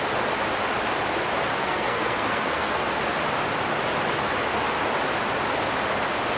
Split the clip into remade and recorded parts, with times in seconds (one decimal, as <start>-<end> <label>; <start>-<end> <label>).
0.0-1.6 recorded; 1.6-2.8 remade; 2.8-6.4 recorded